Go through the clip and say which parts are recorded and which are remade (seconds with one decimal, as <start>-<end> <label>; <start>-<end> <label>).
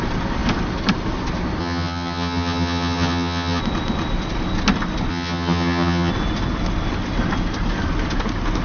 0.0-1.6 recorded; 1.6-3.6 remade; 3.6-5.1 recorded; 5.1-6.1 remade; 6.1-8.6 recorded